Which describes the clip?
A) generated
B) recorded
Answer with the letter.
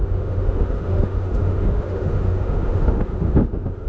A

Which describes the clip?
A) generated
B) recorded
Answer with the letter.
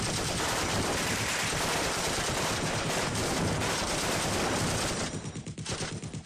A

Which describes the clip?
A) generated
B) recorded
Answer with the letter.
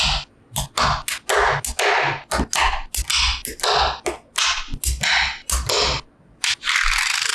B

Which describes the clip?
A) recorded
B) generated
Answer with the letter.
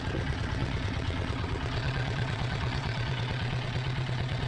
B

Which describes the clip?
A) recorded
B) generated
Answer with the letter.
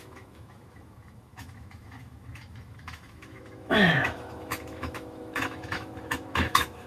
B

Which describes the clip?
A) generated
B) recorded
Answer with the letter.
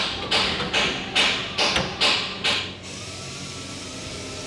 B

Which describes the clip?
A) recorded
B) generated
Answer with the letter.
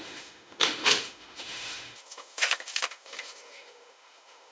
B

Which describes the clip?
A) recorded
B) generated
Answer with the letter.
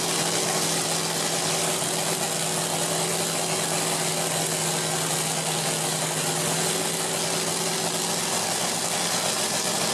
A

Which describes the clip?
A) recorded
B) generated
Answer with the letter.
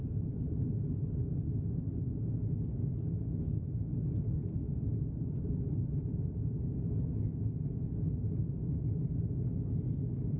A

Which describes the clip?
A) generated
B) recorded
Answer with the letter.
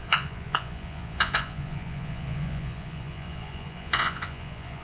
A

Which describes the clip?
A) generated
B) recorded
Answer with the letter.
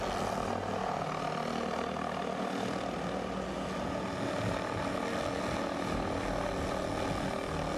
B